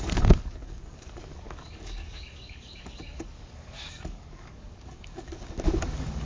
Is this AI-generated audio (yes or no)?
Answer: yes